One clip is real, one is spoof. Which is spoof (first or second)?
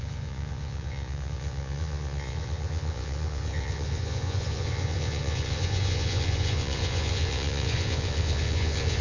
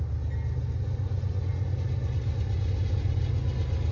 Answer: first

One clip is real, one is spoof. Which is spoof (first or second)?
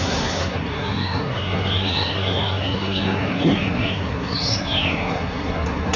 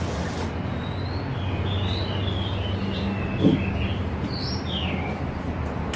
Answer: first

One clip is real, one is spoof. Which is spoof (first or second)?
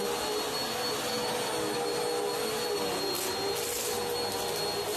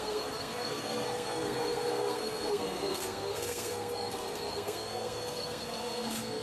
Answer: second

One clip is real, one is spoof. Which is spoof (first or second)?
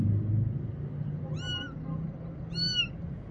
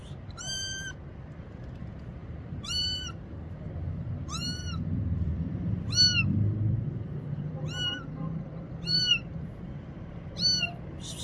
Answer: second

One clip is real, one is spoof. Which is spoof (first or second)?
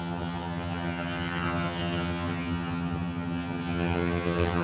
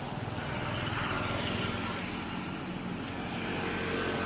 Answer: first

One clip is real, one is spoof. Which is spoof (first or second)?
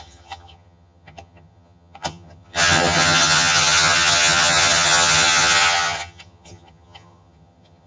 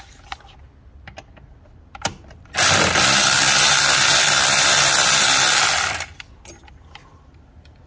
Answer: first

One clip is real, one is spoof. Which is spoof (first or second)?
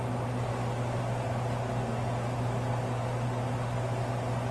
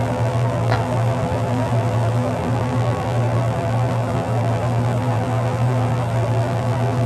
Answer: second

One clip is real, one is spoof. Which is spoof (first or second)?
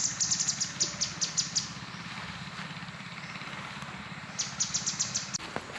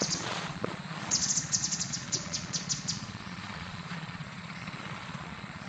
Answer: second